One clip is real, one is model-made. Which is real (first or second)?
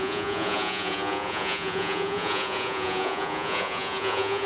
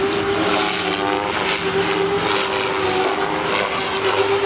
second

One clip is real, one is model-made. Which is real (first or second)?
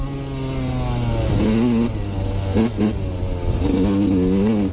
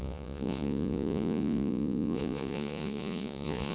first